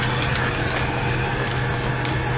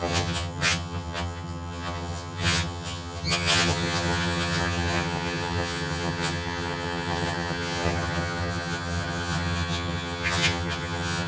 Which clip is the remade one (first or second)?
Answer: second